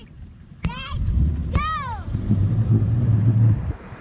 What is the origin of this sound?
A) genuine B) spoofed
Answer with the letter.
B